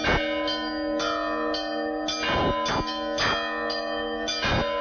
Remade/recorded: recorded